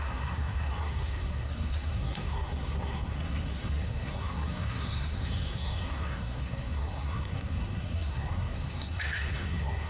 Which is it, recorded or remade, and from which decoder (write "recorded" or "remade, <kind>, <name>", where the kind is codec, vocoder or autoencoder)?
remade, codec, SNAC